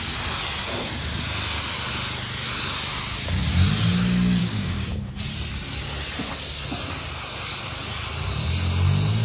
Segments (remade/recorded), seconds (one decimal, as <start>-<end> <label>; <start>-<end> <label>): 0.0-4.4 recorded; 4.4-5.1 remade; 5.1-9.2 recorded